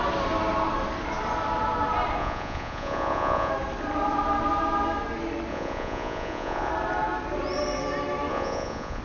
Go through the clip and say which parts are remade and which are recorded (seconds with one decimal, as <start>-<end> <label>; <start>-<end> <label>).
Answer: 0.0-2.2 recorded; 2.2-3.5 remade; 3.5-5.5 recorded; 5.5-6.7 remade; 6.7-8.3 recorded; 8.3-9.0 remade